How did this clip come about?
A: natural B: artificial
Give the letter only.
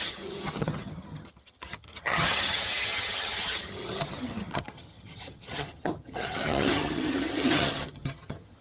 B